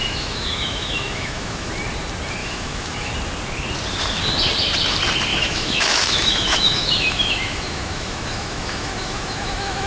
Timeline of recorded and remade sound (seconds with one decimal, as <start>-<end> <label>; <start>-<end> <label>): 0.0-1.7 remade; 1.7-2.4 recorded; 2.4-3.1 remade; 3.1-5.3 recorded; 5.3-9.9 remade

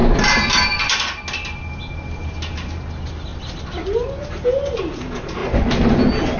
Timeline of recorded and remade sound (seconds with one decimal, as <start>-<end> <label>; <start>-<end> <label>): 0.0-6.4 recorded